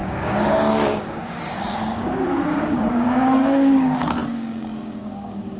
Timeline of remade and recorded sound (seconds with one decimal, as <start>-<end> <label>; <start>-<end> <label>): 0.0-5.6 remade